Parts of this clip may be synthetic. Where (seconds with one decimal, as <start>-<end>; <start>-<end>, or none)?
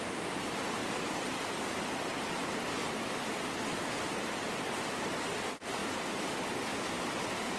none